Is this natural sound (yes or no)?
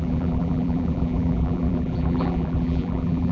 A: no